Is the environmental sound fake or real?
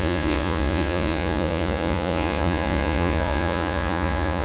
fake